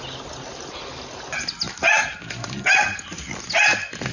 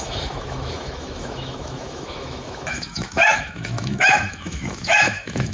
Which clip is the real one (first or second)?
first